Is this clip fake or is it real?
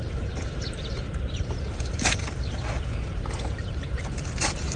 fake